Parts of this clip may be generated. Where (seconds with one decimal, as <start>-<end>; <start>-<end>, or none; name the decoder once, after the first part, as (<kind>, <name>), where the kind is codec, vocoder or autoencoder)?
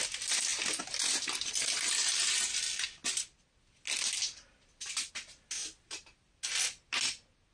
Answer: none